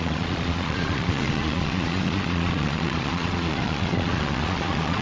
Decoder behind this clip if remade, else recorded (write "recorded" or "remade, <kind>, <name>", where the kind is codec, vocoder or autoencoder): remade, vocoder, Vocos